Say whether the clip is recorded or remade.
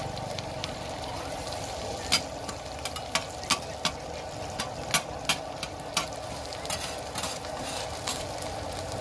recorded